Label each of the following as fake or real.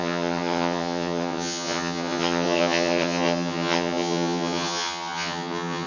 fake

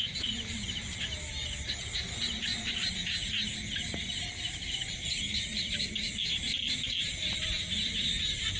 real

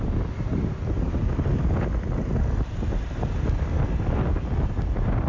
real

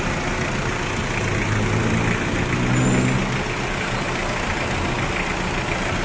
real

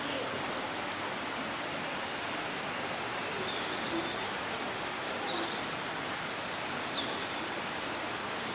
real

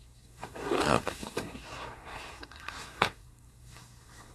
fake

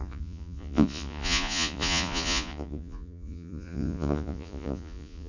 fake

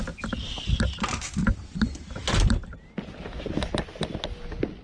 real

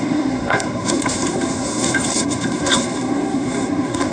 fake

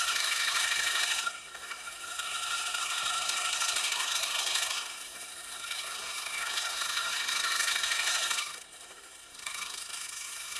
fake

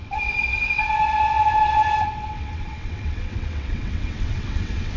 fake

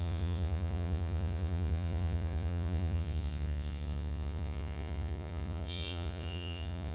fake